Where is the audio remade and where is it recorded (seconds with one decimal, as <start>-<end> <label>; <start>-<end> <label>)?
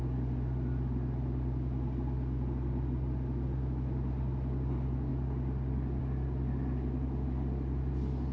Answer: 0.0-8.3 recorded